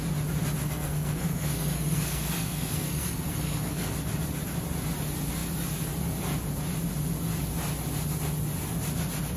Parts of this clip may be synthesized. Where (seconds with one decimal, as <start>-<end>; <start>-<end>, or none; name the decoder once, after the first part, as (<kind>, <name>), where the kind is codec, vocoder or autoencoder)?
0.6-3.9 (codec, SNAC)